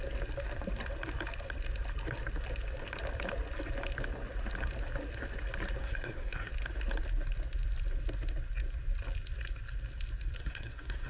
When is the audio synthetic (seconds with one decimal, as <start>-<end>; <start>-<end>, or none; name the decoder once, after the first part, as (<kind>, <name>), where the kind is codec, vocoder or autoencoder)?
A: 5.8-6.5 (codec, SNAC); 10.4-11.1